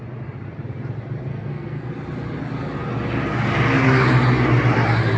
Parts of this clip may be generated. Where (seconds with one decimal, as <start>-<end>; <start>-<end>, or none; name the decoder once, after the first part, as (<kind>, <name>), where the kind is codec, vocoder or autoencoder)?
1.3-1.9 (codec, SNAC)